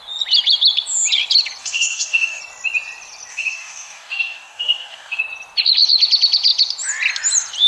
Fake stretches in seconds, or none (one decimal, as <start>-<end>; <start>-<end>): 1.6-2.4; 3.3-5.2